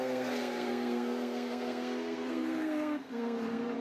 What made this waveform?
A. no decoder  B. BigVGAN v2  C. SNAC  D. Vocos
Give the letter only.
C